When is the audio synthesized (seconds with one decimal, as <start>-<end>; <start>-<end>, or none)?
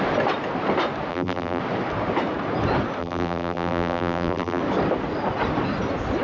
1.1-1.6; 3.0-4.6